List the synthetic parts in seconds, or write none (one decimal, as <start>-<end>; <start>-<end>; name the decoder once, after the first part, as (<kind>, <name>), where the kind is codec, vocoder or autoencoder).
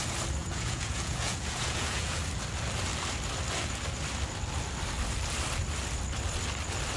0.4-2.2 (vocoder, Vocos)